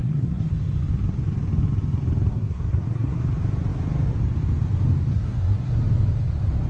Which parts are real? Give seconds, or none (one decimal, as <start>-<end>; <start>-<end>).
0.5-2.3; 3.2-5.1; 5.7-6.7